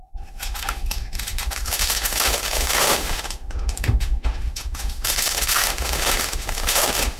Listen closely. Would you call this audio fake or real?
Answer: fake